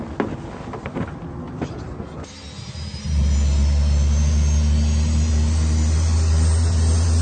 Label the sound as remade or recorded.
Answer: recorded